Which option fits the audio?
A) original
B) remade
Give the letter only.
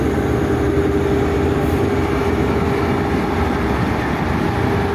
A